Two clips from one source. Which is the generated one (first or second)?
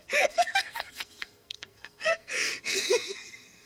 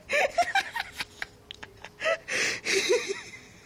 first